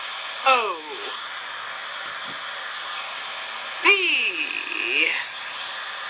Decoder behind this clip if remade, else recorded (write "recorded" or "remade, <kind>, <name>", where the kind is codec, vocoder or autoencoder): recorded